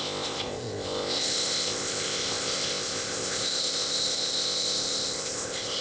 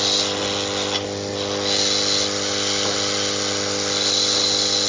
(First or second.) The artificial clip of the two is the first